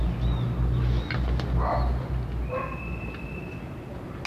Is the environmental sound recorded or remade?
recorded